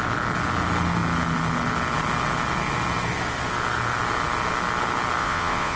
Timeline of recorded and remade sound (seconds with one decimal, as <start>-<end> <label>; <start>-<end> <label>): 0.0-5.2 recorded; 5.2-5.8 remade